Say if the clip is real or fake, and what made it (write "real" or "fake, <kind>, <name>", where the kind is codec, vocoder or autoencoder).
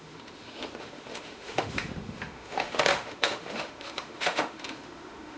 fake, autoencoder, DAC-VAE